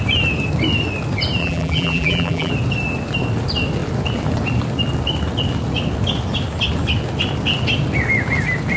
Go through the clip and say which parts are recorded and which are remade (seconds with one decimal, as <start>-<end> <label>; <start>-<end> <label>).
0.0-1.4 recorded; 1.4-2.5 remade; 2.5-8.8 recorded